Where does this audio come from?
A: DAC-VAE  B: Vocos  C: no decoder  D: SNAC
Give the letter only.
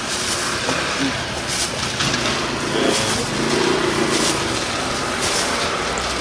C